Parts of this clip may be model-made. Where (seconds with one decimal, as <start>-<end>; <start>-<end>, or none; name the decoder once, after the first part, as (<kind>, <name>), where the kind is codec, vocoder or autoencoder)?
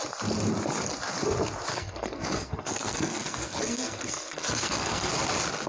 1.7-5.1 (codec, SNAC)